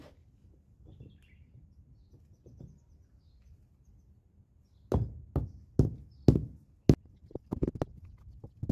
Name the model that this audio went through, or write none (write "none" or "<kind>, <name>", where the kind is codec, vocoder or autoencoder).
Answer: none